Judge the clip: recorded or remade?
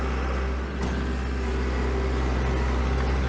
recorded